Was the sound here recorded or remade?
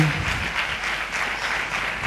recorded